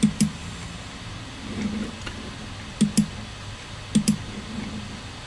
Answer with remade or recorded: recorded